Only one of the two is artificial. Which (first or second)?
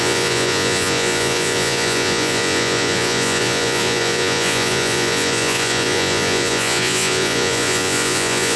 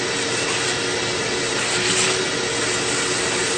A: first